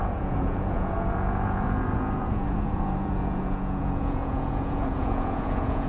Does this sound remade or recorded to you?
remade